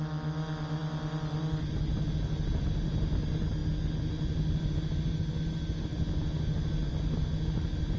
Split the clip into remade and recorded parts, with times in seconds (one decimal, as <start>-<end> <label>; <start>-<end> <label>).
0.0-8.0 recorded